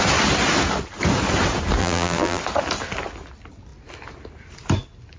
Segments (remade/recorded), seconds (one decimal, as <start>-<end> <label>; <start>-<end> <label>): 0.0-1.8 recorded; 1.8-2.4 remade; 2.4-5.2 recorded